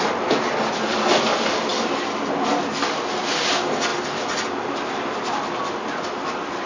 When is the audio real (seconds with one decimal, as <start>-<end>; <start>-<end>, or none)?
0.0-6.7